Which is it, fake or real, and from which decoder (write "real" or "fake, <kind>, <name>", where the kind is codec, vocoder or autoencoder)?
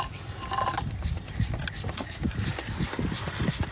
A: real